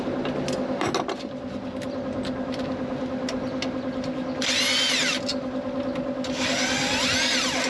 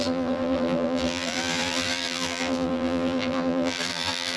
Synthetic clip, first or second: second